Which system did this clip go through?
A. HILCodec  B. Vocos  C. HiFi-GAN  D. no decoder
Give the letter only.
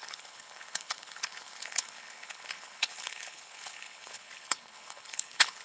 A